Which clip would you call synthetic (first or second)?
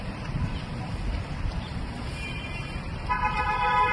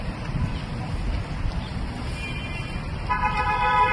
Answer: first